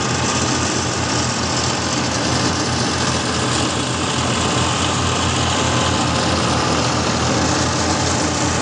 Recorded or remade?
recorded